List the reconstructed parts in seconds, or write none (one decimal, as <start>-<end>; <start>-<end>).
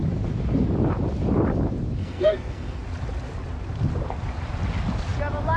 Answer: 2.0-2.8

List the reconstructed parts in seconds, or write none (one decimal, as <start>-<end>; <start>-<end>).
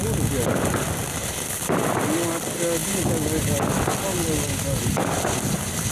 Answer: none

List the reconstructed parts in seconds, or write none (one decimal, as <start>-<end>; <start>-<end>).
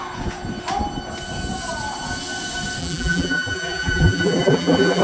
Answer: 2.8-5.0